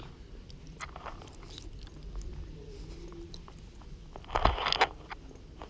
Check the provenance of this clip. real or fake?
real